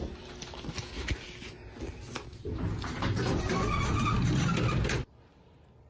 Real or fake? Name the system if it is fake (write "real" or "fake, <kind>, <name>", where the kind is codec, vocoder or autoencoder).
real